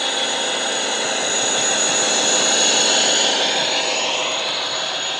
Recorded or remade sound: recorded